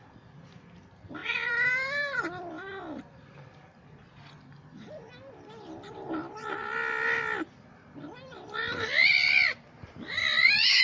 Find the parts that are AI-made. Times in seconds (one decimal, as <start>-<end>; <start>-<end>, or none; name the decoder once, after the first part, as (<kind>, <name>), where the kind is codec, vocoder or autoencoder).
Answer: 1.2-3.0 (vocoder, BigVGAN v2); 6.6-10.8